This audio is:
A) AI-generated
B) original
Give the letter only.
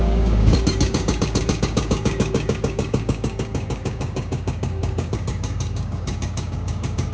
A